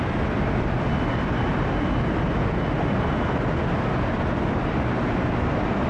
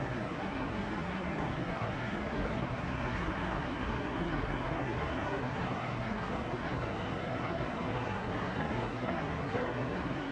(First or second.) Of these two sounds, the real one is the first